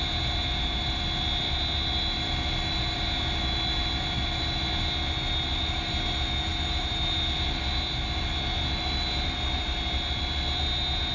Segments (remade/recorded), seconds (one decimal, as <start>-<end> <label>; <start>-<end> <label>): 0.0-11.1 recorded